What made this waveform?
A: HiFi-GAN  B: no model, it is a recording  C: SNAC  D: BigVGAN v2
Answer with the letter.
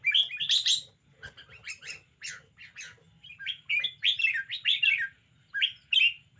B